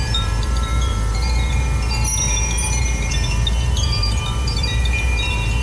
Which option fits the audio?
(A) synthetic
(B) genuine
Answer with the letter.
A